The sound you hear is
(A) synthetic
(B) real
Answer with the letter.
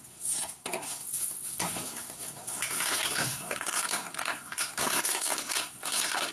A